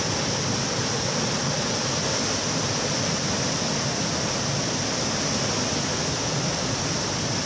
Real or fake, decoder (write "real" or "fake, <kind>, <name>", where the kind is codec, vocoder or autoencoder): real